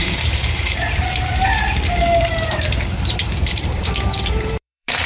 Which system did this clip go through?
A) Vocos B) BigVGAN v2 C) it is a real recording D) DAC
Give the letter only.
B